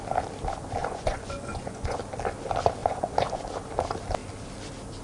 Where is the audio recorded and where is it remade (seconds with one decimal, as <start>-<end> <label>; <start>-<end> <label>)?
0.0-0.8 recorded; 0.8-2.0 remade; 2.0-2.8 recorded; 2.8-3.4 remade; 3.4-5.0 recorded